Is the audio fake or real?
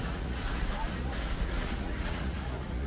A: fake